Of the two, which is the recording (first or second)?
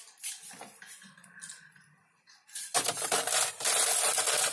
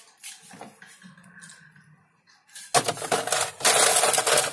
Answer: second